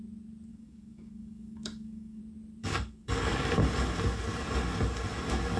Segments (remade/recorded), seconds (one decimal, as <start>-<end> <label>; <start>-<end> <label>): 0.0-0.5 recorded; 0.5-2.2 remade; 2.2-2.6 recorded; 2.6-3.6 remade; 3.6-5.6 recorded